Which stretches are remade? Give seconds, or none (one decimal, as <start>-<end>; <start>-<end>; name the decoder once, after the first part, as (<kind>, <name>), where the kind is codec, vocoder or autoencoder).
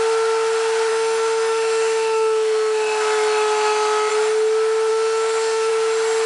0.9-4.1 (autoencoder, DAC-VAE); 4.9-5.7